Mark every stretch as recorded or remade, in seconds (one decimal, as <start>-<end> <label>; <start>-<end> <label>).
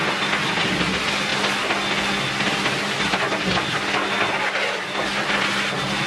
0.0-6.1 recorded